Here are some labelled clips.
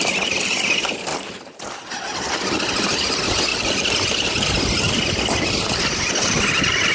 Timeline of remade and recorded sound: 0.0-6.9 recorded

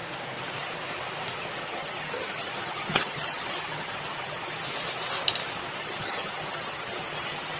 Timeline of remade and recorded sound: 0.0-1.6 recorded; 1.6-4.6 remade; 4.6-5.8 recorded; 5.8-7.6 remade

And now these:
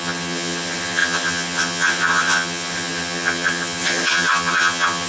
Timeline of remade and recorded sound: 0.0-5.1 remade